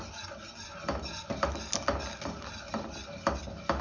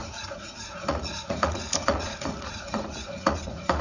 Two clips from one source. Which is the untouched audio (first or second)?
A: first